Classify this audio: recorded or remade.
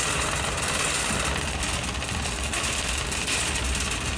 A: recorded